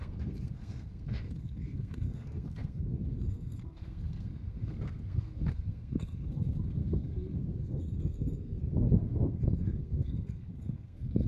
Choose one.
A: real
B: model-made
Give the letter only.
B